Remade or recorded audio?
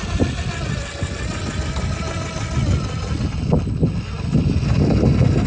recorded